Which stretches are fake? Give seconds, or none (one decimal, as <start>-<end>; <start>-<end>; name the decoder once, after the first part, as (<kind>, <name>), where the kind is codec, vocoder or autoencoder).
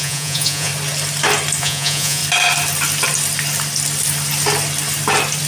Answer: 0.0-0.7 (vocoder, Vocos); 1.6-2.2